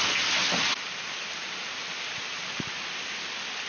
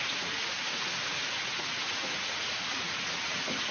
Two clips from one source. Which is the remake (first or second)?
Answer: second